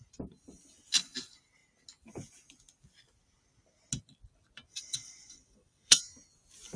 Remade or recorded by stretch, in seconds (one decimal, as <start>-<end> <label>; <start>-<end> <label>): 0.0-4.7 recorded; 4.7-6.0 remade; 6.0-6.8 recorded